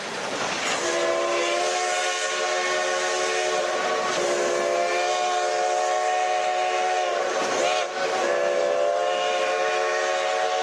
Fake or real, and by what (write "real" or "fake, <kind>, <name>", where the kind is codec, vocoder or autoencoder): real